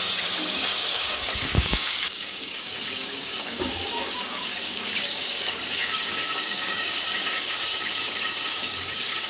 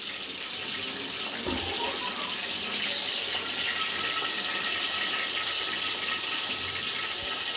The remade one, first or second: first